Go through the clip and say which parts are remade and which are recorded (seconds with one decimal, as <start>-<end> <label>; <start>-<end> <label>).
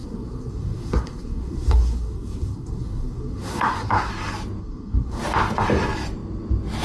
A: 0.0-4.1 remade; 4.1-4.6 recorded; 4.6-5.2 remade; 5.2-6.8 recorded